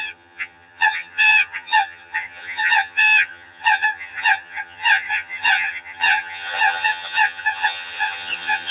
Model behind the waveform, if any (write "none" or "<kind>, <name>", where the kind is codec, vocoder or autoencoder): vocoder, HiFi-GAN